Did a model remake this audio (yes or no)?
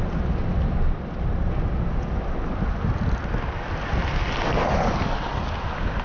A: no